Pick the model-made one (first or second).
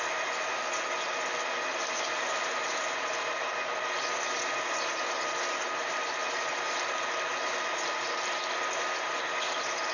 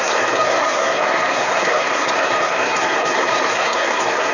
second